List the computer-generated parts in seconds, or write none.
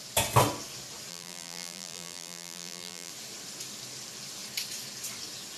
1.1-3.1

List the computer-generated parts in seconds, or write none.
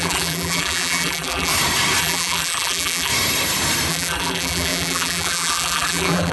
0.0-1.5; 2.0-3.1; 3.9-6.3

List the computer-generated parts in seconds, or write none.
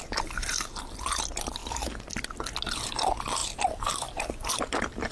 0.4-1.0; 3.4-5.1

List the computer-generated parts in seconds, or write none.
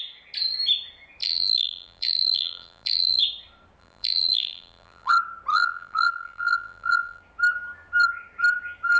1.2-3.2; 3.8-5.1; 5.5-7.2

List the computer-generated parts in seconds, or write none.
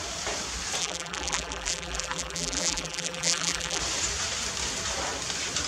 0.8-3.8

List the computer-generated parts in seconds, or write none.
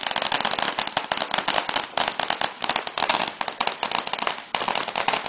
none